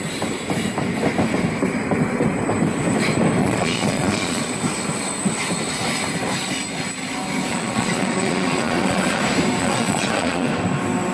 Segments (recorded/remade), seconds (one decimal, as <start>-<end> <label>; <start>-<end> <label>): 0.0-3.4 recorded; 3.4-4.4 remade; 4.4-7.5 recorded; 7.5-9.2 remade; 9.2-9.6 recorded; 9.6-10.5 remade; 10.5-11.1 recorded